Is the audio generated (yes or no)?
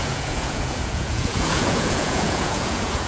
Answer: yes